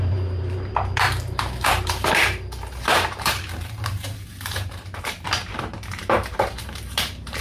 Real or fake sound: fake